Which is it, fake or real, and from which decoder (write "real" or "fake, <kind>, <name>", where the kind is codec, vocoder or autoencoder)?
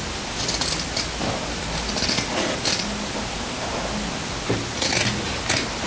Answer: real